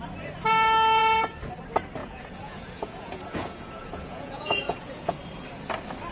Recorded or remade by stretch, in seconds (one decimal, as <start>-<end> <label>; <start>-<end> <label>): 0.0-2.0 recorded; 2.0-5.2 remade; 5.2-6.1 recorded